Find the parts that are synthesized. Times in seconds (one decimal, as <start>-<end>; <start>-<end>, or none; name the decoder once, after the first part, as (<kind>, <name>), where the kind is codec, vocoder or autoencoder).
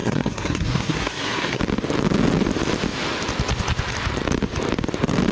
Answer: 0.0-1.6 (codec, SNAC)